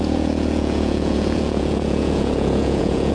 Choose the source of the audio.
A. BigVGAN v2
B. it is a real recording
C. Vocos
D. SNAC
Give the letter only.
C